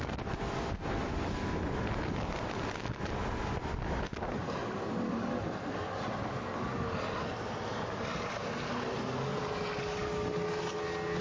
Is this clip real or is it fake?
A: real